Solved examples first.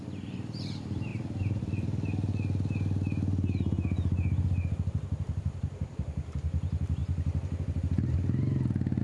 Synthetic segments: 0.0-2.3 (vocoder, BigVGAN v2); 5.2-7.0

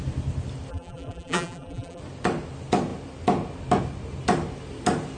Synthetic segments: 0.7-2.0 (vocoder, BigVGAN v2)

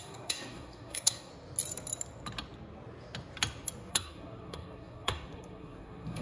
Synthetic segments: 0.0-1.3 (codec, SNAC); 3.9-6.2

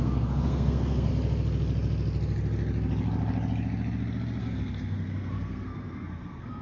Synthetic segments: 0.0-1.1 (codec, SNAC); 4.4-6.6

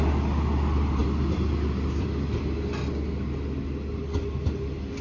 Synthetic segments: none

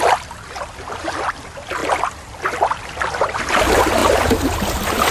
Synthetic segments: none

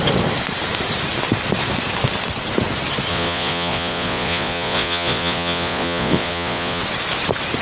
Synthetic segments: 3.1-6.8 (vocoder, Vocos)

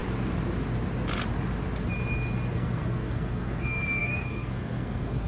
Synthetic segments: 2.5-5.3 (codec, SNAC)